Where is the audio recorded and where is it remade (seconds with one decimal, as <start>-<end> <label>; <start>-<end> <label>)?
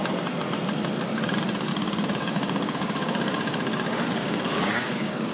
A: 0.0-1.7 recorded; 1.7-5.3 remade